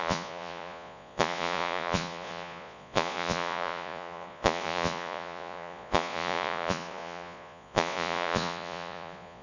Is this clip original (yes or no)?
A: no